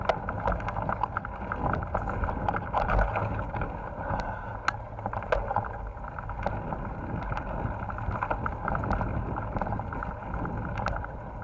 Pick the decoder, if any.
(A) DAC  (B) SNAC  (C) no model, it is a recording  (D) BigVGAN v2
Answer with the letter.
C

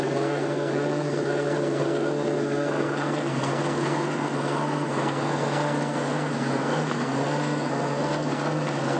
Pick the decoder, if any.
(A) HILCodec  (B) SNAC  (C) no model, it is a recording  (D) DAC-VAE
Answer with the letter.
B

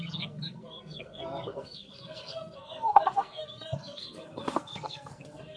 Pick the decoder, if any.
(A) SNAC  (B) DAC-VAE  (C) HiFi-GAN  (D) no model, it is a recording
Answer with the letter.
A